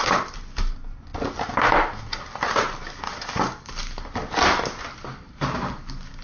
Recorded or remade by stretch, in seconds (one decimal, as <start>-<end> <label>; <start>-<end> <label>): 0.0-6.2 recorded